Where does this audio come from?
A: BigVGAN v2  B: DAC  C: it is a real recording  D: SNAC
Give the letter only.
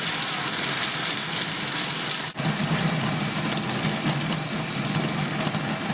C